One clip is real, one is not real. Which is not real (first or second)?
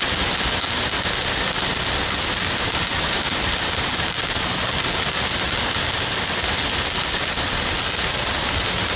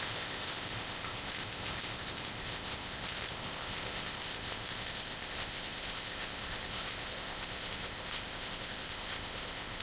second